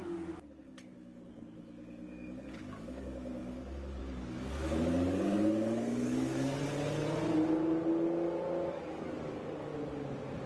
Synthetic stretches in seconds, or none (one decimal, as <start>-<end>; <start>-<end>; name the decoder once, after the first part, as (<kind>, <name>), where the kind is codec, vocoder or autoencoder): 0.0-6.6 (codec, DAC); 8.7-9.7